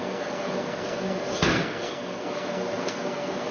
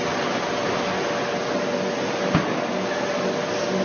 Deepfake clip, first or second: first